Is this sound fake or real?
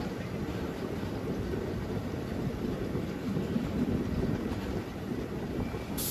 real